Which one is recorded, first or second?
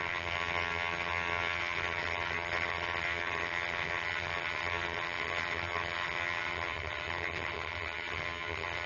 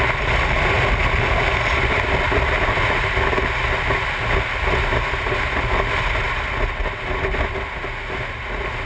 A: second